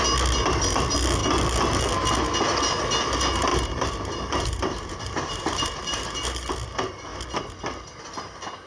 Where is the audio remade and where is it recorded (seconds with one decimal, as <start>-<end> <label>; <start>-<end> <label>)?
0.0-3.5 recorded; 3.5-6.5 remade; 6.5-8.7 recorded